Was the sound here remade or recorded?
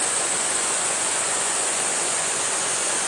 remade